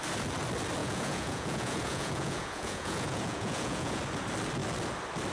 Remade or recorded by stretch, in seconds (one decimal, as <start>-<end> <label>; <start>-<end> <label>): 0.0-0.8 recorded; 0.8-4.0 remade; 4.0-5.3 recorded

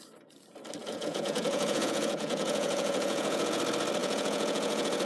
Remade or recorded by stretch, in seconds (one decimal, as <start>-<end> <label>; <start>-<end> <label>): 0.0-0.8 recorded; 0.8-3.6 remade; 3.6-4.0 recorded; 4.0-5.1 remade

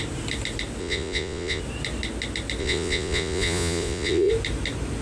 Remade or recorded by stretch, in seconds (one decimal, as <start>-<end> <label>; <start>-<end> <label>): 0.0-0.8 recorded; 0.8-1.6 remade; 1.6-2.6 recorded; 2.6-4.3 remade; 4.3-5.0 recorded

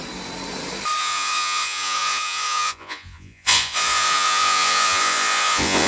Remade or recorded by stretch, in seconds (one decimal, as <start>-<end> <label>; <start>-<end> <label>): 0.0-1.0 recorded; 1.0-5.9 remade

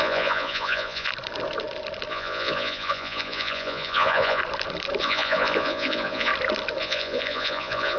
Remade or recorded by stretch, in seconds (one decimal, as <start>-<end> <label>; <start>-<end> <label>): 0.0-1.1 remade; 1.1-2.1 recorded; 2.1-4.4 remade; 4.4-5.0 recorded; 5.0-6.3 remade; 6.3-6.8 recorded; 6.8-8.0 remade

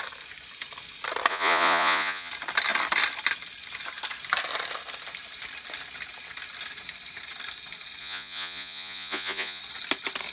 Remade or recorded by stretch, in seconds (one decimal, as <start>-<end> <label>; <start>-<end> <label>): 0.0-1.3 recorded; 1.3-2.3 remade; 2.3-8.0 recorded; 8.0-9.6 remade; 9.6-10.3 recorded